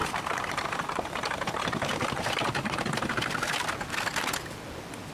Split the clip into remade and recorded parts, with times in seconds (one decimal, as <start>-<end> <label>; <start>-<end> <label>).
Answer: 0.0-3.1 remade; 3.1-5.1 recorded